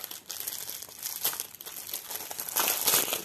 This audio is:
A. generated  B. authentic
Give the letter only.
B